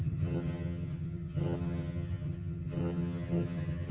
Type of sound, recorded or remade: remade